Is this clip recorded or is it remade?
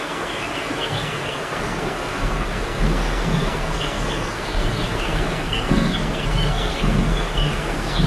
remade